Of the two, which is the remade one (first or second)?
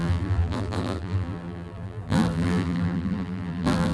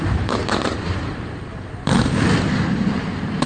first